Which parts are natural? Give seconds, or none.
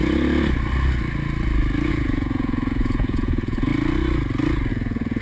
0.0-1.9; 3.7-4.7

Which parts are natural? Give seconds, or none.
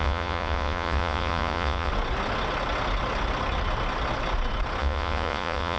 1.9-4.8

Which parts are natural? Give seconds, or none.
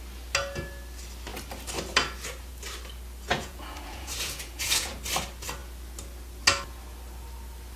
0.0-3.3; 4.9-7.8